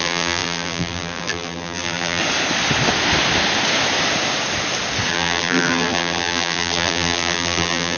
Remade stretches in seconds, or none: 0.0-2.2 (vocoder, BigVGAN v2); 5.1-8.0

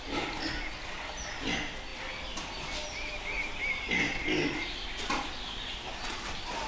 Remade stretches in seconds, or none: none

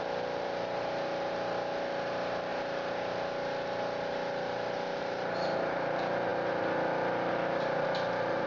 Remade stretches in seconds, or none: 0.0-2.5 (vocoder, BigVGAN v2); 5.0-8.5

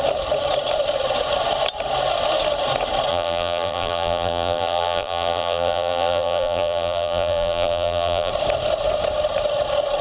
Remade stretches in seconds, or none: 3.1-8.3 (vocoder, BigVGAN v2)

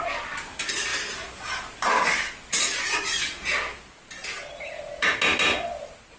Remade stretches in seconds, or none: none

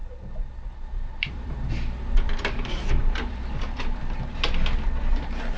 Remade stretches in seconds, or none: 0.0-1.7 (vocoder, BigVGAN v2); 3.0-4.0